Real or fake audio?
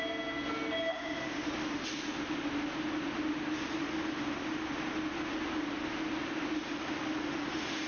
real